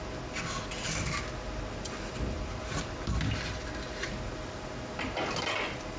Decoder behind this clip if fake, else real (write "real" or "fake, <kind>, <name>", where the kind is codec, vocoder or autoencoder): real